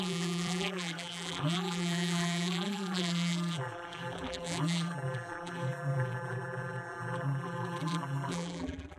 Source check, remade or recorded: remade